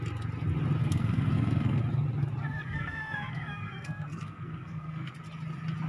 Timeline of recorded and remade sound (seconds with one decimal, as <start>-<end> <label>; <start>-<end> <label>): 0.0-0.8 recorded; 0.8-1.8 remade; 1.8-2.4 recorded; 2.4-5.1 remade; 5.1-5.9 recorded